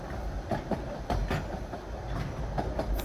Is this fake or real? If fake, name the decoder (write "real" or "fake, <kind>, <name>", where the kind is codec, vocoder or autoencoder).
real